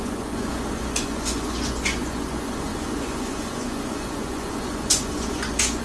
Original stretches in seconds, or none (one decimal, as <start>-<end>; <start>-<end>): none